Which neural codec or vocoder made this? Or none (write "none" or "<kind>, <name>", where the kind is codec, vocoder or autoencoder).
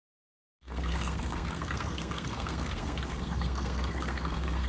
codec, SNAC